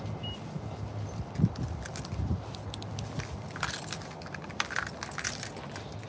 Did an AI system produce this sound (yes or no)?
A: no